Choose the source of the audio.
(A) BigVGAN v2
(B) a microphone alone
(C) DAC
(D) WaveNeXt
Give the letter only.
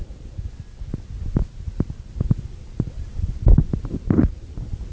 A